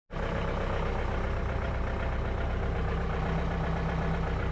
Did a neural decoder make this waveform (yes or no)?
no